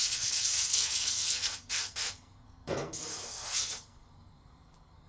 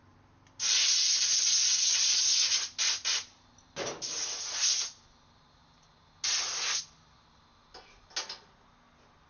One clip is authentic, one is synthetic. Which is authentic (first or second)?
second